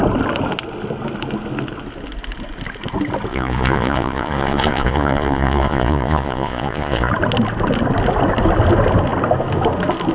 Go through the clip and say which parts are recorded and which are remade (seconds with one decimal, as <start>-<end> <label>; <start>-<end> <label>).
0.0-3.3 recorded; 3.3-7.1 remade; 7.1-10.1 recorded